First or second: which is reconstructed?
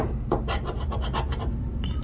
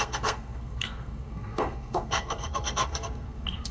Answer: second